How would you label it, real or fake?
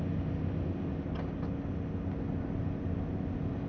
real